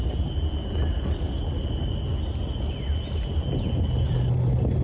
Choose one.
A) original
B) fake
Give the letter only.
A